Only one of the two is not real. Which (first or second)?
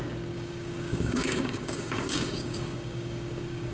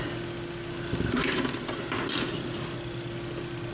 first